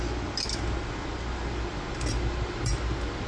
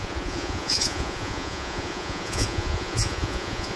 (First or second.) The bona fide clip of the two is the first